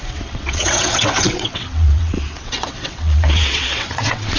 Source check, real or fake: fake